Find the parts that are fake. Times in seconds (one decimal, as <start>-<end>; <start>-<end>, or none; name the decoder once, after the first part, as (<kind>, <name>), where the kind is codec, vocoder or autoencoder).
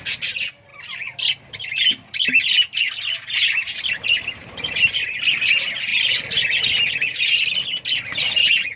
none